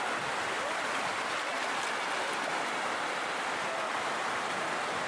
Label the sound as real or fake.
real